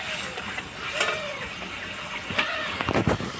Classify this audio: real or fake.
real